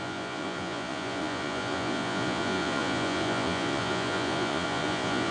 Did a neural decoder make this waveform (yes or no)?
yes